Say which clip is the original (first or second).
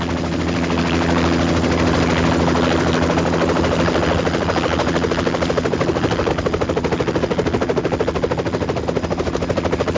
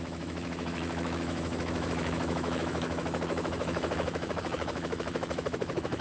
first